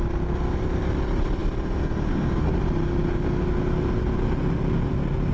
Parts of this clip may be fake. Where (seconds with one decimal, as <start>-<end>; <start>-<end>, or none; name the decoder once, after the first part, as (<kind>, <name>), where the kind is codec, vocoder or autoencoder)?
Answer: none